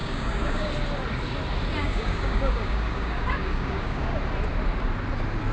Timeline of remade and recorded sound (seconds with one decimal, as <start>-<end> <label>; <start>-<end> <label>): 0.0-0.7 remade; 0.7-1.8 recorded; 1.8-4.2 remade; 4.2-5.5 recorded